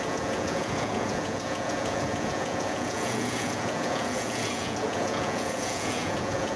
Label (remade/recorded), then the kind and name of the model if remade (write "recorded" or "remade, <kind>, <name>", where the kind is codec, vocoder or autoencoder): remade, vocoder, Vocos